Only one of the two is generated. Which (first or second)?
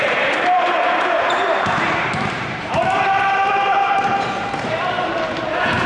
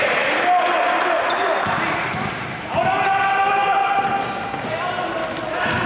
first